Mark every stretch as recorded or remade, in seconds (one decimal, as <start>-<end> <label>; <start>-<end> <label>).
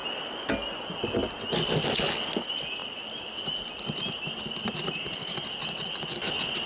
0.0-6.7 recorded